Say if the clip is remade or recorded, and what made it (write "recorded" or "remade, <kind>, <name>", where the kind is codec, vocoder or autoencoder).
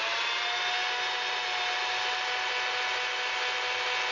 recorded